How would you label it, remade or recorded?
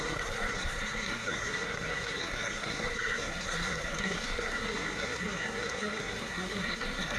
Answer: remade